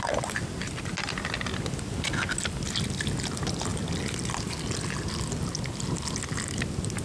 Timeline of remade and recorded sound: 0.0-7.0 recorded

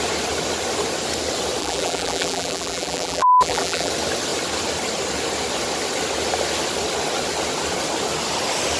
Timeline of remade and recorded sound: 0.0-1.6 recorded; 1.6-3.9 remade; 3.9-8.8 recorded

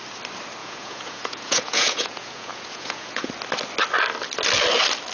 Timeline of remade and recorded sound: 0.0-0.6 recorded; 0.6-3.3 remade; 3.3-5.1 recorded

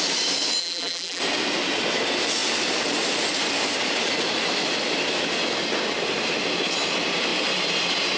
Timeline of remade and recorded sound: 0.0-0.6 recorded; 0.6-1.2 remade; 1.2-8.2 recorded

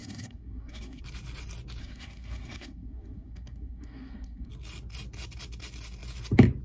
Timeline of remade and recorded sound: 0.0-1.0 remade; 1.0-1.8 recorded; 1.8-4.5 remade; 4.5-6.6 recorded

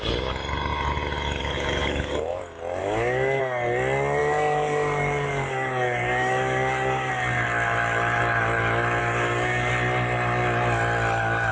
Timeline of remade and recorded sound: 0.0-1.4 recorded; 1.4-2.4 remade; 2.4-2.8 recorded; 2.8-3.4 remade; 3.4-4.2 recorded; 4.2-7.1 remade; 7.1-9.0 recorded; 9.0-9.7 remade; 9.7-11.5 recorded

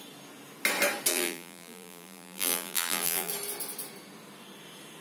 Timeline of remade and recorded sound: 0.0-1.1 recorded; 1.1-3.3 remade; 3.3-5.0 recorded